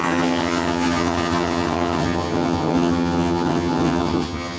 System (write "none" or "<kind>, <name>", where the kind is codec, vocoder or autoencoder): vocoder, HiFi-GAN